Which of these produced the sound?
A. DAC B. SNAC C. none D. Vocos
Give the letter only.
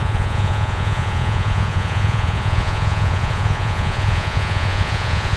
D